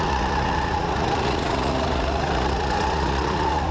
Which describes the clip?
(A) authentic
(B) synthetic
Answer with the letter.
B